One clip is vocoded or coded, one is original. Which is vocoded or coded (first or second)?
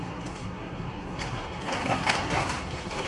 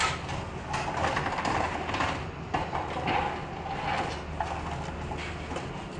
first